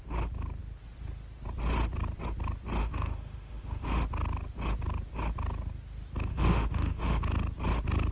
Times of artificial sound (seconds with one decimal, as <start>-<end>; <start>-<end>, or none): 2.8-4.0; 6.3-7.2